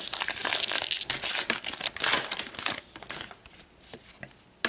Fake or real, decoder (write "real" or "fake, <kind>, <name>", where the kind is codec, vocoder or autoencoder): real